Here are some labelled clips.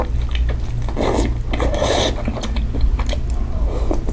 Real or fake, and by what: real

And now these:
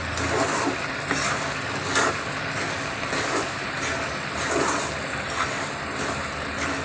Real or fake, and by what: real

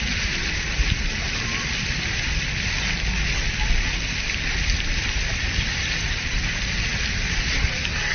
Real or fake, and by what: real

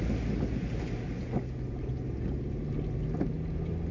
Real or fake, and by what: real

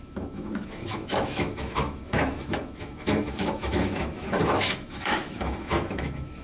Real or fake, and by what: fake, autoencoder, DAC-VAE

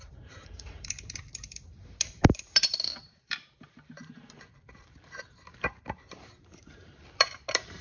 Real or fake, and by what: fake, vocoder, BigVGAN v2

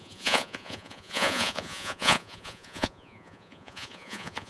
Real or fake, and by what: fake, vocoder, Vocos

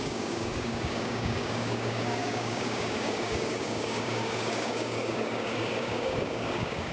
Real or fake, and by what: fake, codec, DAC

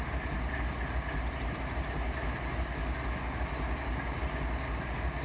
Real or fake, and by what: real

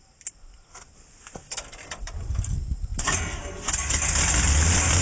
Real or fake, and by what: real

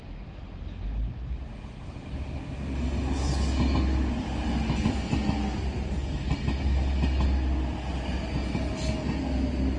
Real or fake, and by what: real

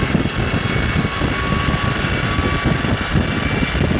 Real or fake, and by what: real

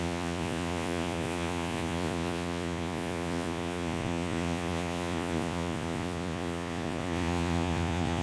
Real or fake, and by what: fake, vocoder, Vocos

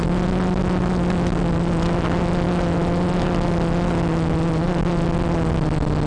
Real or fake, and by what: real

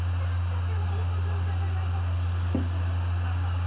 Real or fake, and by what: real